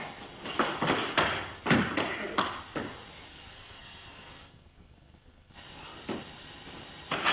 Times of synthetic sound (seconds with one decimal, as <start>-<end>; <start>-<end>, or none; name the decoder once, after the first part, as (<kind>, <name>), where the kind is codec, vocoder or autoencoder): 3.3-5.5 (codec, SNAC)